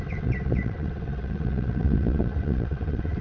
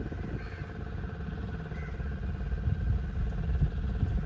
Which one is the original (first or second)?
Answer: second